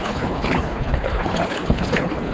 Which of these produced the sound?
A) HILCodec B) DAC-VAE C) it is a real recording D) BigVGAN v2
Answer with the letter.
A